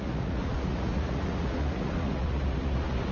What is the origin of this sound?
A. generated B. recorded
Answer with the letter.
A